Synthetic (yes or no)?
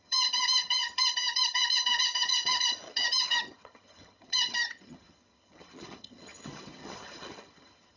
yes